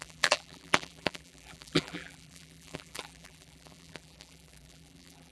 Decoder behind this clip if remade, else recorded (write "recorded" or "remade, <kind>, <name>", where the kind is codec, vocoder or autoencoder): remade, vocoder, BigVGAN v2